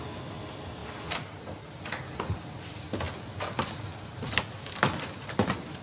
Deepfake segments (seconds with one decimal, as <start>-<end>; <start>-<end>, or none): none